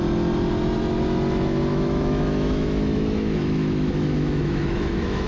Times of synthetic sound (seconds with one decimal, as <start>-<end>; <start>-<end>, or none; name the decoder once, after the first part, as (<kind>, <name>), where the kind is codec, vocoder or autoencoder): 1.7-5.3 (autoencoder, DAC-VAE)